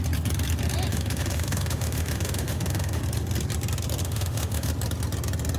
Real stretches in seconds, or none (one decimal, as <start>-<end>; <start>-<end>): 0.0-0.9; 3.0-4.0; 4.7-5.6